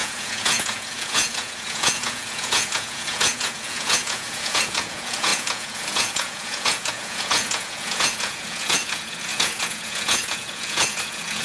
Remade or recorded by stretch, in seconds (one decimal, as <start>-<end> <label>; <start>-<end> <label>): 0.0-11.4 remade